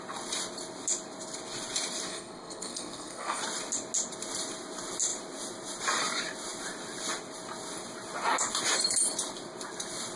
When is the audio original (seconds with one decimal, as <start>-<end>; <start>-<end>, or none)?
0.0-2.1; 3.4-10.2